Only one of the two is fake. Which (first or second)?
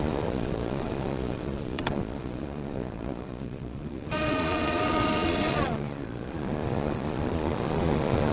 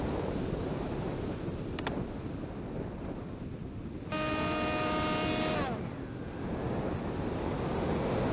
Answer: first